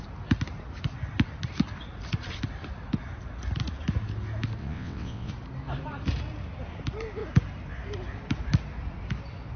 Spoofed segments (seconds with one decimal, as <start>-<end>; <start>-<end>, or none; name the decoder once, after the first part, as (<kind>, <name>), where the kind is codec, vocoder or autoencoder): 4.6-5.3 (vocoder, WaveNeXt)